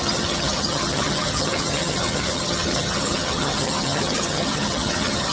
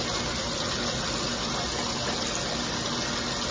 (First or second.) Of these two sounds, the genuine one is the second